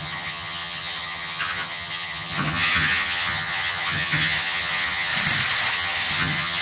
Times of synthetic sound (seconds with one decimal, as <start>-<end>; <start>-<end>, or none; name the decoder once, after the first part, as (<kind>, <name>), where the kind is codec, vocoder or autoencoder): 0.0-5.1 (vocoder, HiFi-GAN); 5.7-6.6